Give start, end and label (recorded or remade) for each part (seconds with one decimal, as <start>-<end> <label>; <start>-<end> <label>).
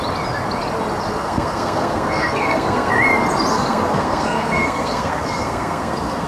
0.0-1.2 recorded; 1.2-2.9 remade; 2.9-3.5 recorded; 3.5-6.3 remade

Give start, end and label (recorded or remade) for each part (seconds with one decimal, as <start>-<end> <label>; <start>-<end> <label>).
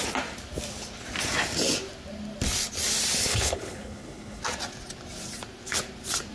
0.0-3.2 recorded; 3.2-4.4 remade; 4.4-6.3 recorded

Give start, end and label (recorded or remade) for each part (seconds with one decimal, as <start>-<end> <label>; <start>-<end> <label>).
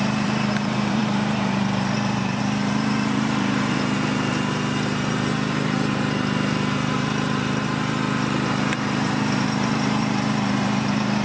0.0-11.2 remade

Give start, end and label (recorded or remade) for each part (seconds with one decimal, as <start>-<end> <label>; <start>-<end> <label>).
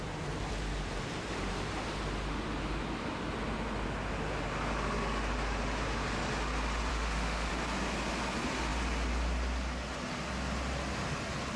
0.0-6.9 recorded; 6.9-7.5 remade; 7.5-11.6 recorded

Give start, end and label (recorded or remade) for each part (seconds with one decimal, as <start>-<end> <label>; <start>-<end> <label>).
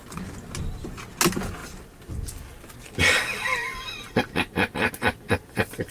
0.0-5.9 recorded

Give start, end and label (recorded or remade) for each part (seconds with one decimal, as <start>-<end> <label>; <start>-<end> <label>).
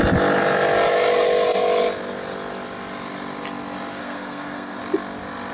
0.0-4.0 recorded; 4.0-4.8 remade; 4.8-5.5 recorded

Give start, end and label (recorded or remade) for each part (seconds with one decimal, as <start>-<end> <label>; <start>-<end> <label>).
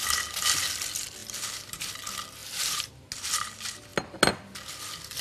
0.0-1.2 recorded; 1.2-1.9 remade; 1.9-2.4 recorded; 2.4-3.1 remade; 3.1-5.2 recorded